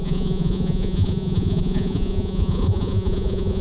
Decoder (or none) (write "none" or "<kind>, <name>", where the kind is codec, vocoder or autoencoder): vocoder, Vocos